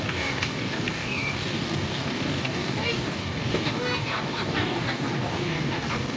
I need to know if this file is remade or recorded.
remade